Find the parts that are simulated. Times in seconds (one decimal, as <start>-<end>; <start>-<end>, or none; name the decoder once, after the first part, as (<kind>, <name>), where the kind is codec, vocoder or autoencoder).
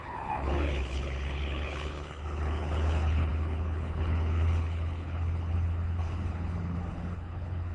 0.0-7.7 (codec, HILCodec)